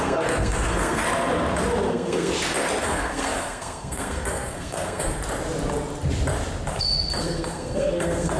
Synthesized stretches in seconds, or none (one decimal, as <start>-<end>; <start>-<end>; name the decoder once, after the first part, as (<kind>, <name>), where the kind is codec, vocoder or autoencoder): 0.0-1.0 (codec, SNAC); 1.9-2.3; 2.8-5.1; 7.2-8.4